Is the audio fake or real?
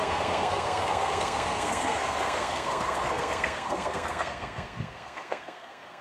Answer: fake